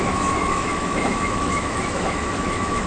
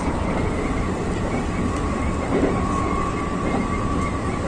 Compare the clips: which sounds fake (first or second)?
first